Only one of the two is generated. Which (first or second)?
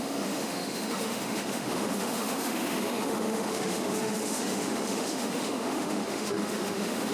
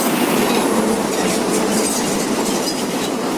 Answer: first